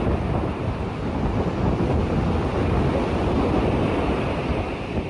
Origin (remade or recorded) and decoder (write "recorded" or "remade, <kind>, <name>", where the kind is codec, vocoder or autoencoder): recorded